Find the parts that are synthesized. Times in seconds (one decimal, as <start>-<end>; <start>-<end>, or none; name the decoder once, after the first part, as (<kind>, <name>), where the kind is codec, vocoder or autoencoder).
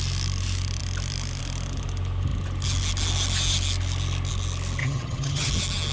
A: 4.8-5.5 (vocoder, HiFi-GAN)